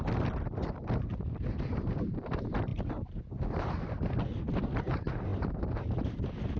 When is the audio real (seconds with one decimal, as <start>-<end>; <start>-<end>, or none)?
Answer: 0.0-6.6